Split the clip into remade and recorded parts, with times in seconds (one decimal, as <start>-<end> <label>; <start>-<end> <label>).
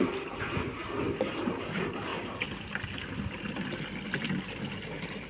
0.0-0.8 remade; 0.8-1.7 recorded; 1.7-2.1 remade; 2.1-5.3 recorded